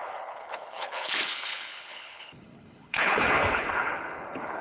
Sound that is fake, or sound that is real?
fake